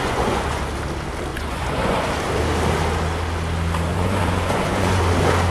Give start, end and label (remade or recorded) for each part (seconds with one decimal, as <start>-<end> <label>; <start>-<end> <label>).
0.0-0.6 remade; 0.6-1.3 recorded; 1.3-2.1 remade; 2.1-3.9 recorded; 3.9-5.0 remade; 5.0-5.5 recorded